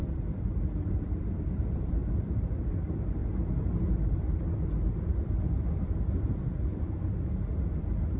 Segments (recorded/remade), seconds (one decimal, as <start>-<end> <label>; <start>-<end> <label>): 0.0-3.2 remade; 3.2-3.9 recorded; 3.9-8.2 remade